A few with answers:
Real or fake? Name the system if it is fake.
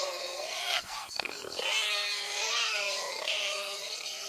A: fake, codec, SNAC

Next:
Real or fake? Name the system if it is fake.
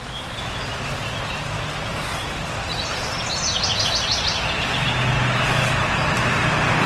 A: real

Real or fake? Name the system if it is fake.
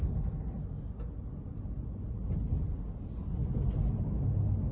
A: real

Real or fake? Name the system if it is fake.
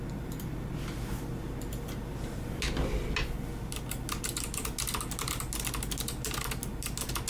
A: real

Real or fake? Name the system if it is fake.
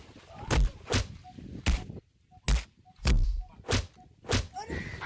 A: real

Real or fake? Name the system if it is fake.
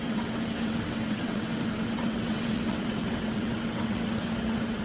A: fake, vocoder, WaveNeXt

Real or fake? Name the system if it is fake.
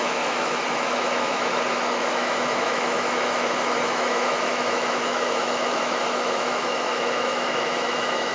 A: fake, autoencoder, DAC-VAE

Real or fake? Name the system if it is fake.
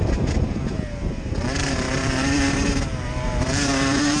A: fake, vocoder, BigVGAN v2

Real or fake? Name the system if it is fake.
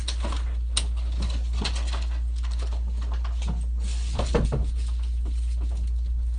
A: real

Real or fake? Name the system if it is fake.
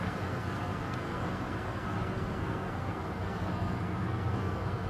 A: fake, codec, SNAC